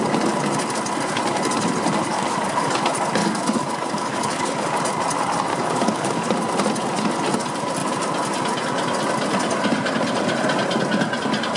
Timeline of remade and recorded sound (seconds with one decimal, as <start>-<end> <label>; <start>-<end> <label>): 0.0-2.1 recorded; 2.1-2.7 remade; 2.7-3.2 recorded; 3.2-4.8 remade; 4.8-5.5 recorded; 5.5-6.3 remade; 6.3-11.6 recorded